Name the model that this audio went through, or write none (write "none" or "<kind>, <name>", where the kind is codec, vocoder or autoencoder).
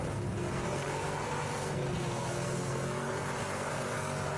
codec, SNAC